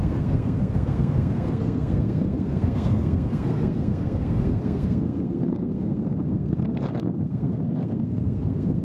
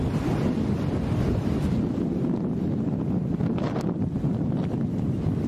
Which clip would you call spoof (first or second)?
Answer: first